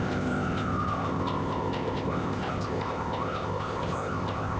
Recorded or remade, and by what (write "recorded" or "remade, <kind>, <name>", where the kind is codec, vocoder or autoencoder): remade, codec, ZipCodec